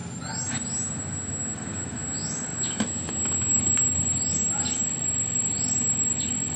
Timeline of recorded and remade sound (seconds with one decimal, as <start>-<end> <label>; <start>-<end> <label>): 0.0-3.5 recorded; 3.5-6.6 remade